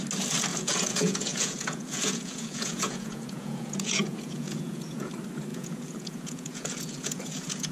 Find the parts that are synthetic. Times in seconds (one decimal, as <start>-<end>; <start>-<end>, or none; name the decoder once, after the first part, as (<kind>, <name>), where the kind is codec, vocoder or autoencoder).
0.5-5.1 (vocoder, Vocos); 5.5-7.7